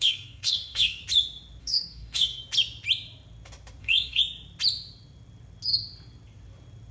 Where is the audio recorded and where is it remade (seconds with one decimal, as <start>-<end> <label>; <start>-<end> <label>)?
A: 0.0-1.0 remade; 1.0-1.6 recorded; 1.6-2.4 remade; 2.4-3.8 recorded; 3.8-4.2 remade; 4.2-6.9 recorded